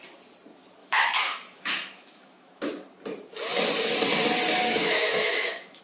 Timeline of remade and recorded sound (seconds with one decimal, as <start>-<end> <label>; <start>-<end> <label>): 0.0-0.8 recorded; 0.8-2.6 remade; 2.6-4.6 recorded; 4.6-5.8 remade